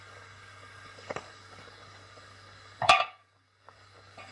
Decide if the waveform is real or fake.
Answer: fake